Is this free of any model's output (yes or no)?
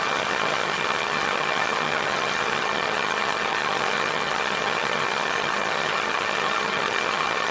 no